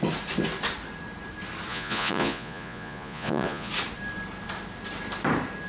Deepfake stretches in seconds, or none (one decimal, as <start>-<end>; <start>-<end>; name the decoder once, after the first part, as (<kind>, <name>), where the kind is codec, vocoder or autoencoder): 1.7-3.7 (vocoder, Vocos)